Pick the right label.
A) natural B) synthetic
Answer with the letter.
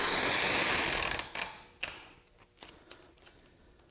A